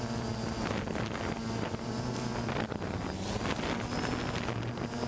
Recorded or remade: recorded